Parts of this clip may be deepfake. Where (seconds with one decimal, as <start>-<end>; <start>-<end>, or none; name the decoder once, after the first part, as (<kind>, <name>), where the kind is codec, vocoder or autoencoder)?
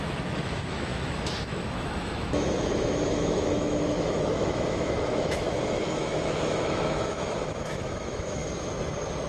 0.0-8.4 (autoencoder, DAC-VAE)